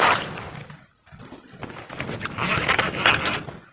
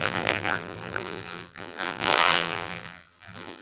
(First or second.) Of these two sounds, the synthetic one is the second